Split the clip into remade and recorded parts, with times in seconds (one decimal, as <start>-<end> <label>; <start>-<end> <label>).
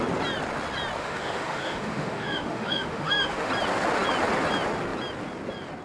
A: 0.0-1.0 recorded; 1.0-3.5 remade; 3.5-5.8 recorded